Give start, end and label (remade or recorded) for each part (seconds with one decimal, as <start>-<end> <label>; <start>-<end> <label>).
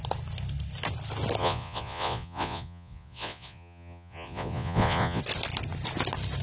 0.0-1.4 recorded; 1.4-5.2 remade; 5.2-6.4 recorded